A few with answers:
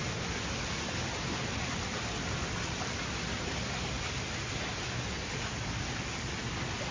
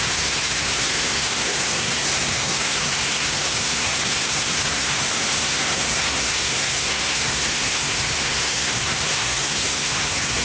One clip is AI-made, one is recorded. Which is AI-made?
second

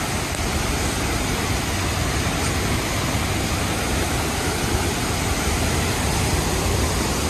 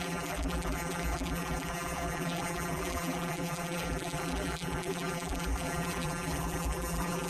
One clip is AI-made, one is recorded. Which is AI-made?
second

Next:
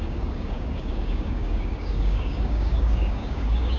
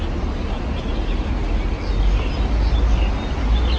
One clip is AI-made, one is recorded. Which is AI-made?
first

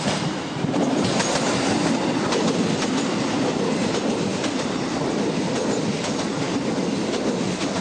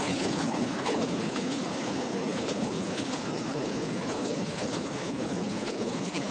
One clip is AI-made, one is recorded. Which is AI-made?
second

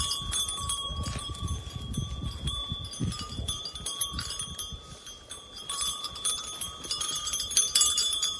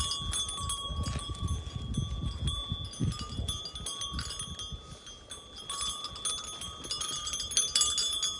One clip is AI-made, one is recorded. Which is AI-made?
first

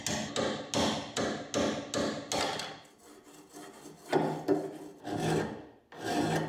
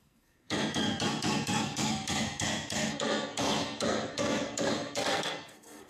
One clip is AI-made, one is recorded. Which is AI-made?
second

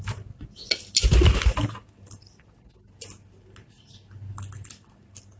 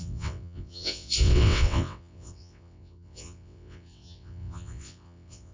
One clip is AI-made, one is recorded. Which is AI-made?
second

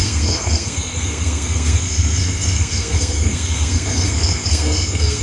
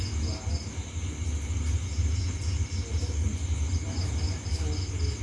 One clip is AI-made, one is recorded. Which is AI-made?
first